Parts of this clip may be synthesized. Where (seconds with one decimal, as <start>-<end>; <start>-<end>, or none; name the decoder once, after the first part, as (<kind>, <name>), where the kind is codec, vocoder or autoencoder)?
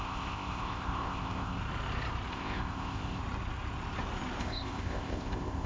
0.0-1.6 (codec, ZipCodec); 2.3-3.2; 4.4-5.7